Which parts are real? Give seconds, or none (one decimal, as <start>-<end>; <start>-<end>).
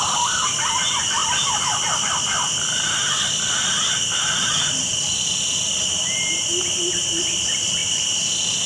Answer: 0.0-8.7